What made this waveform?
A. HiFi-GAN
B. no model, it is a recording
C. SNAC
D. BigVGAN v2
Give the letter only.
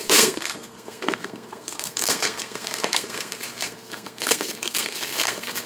C